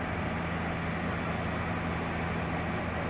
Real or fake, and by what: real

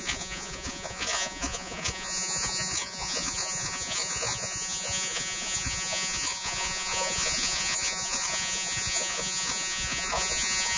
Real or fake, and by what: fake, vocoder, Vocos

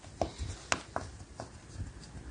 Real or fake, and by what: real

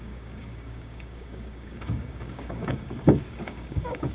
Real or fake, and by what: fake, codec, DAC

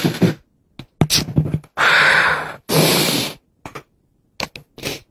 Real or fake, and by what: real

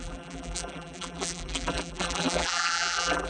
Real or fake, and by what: fake, vocoder, BigVGAN v2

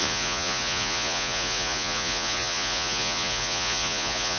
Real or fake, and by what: fake, vocoder, Vocos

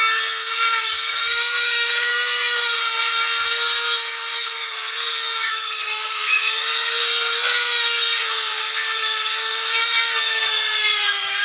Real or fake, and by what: fake, codec, SNAC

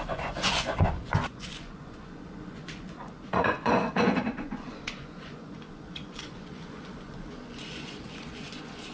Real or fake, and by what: fake, vocoder, Vocos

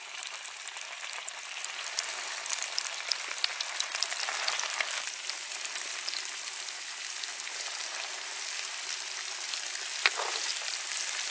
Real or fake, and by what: fake, vocoder, BigVGAN v2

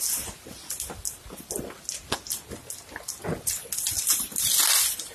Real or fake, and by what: real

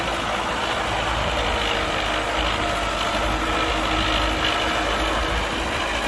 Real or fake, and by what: real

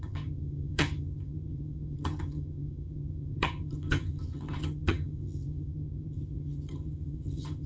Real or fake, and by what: fake, vocoder, HiFi-GAN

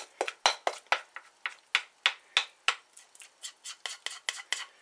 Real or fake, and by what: real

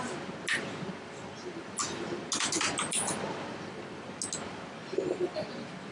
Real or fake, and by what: real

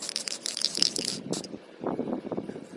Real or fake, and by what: real